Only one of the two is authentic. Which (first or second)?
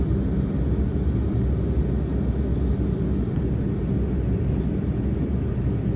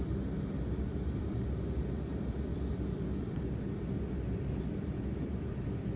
first